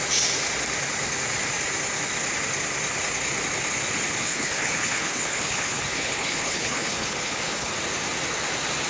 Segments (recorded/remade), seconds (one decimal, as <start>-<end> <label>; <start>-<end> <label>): 0.0-4.2 recorded; 4.2-7.7 remade; 7.7-8.9 recorded